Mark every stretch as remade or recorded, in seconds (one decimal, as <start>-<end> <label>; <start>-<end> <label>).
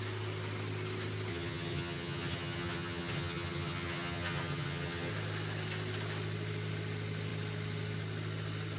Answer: 0.0-1.3 recorded; 1.3-5.1 remade; 5.1-8.8 recorded